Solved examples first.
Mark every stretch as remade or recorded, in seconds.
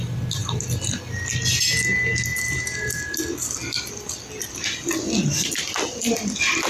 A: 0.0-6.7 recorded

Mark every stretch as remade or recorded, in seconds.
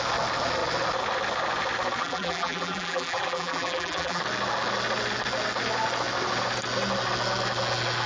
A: 0.0-2.0 recorded; 2.0-4.2 remade; 4.2-8.1 recorded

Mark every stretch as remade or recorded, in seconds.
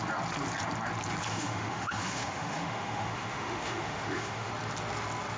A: 0.0-1.3 recorded; 1.3-4.5 remade; 4.5-5.4 recorded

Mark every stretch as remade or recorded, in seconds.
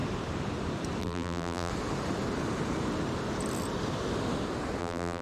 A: 0.0-1.0 recorded; 1.0-1.7 remade; 1.7-4.8 recorded; 4.8-5.2 remade